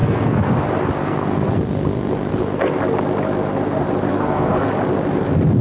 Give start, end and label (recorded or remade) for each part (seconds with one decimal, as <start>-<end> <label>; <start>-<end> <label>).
0.0-0.5 remade; 0.5-1.0 recorded; 1.0-1.6 remade; 1.6-2.3 recorded; 2.3-2.8 remade; 2.8-4.1 recorded; 4.1-4.7 remade; 4.7-5.6 recorded